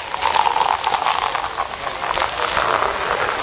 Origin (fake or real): real